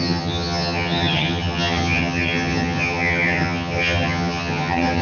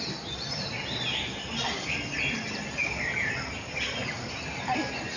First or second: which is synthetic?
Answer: first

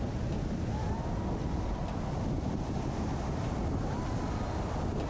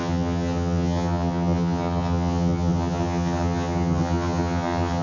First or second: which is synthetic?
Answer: second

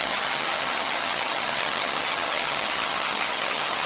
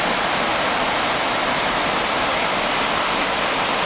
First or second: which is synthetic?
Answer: first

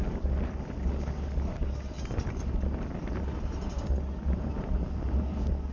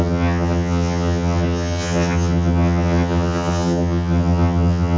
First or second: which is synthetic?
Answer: second